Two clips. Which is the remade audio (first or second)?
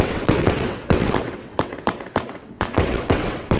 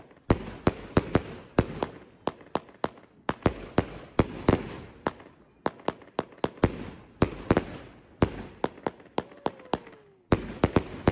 first